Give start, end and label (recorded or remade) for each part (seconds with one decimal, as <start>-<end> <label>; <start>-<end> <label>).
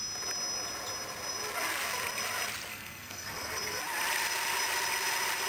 0.0-2.7 recorded; 2.7-3.8 remade; 3.8-5.5 recorded